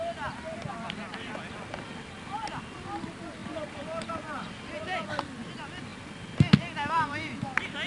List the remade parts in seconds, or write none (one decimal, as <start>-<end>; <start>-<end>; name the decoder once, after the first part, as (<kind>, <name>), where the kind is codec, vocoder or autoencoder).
none